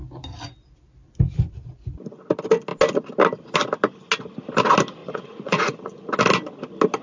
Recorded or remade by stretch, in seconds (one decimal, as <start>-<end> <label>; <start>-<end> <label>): 0.0-5.0 recorded; 5.0-6.1 remade; 6.1-7.0 recorded